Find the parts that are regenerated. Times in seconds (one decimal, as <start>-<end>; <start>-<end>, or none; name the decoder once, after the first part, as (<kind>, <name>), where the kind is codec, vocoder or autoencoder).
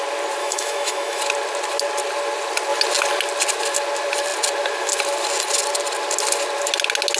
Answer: 0.4-1.2 (autoencoder, DAC-VAE)